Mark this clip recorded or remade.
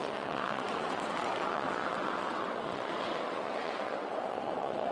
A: remade